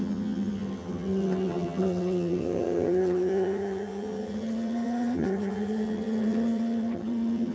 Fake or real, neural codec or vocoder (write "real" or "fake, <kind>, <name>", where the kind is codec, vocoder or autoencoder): fake, vocoder, HiFi-GAN